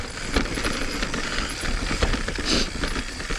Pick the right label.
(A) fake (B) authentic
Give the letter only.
B